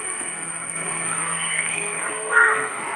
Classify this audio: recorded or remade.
remade